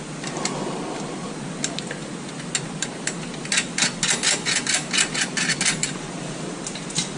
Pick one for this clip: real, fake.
real